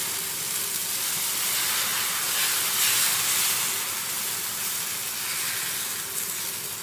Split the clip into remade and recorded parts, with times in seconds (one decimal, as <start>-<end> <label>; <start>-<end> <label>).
0.0-6.8 recorded